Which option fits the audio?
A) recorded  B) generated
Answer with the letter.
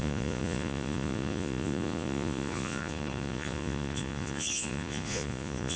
B